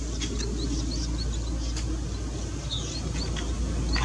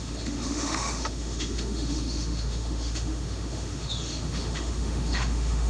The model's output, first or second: second